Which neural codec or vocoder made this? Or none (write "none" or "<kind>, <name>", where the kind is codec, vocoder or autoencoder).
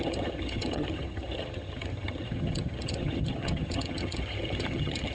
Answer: vocoder, HiFi-GAN